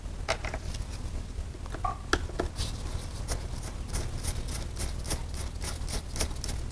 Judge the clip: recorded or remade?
recorded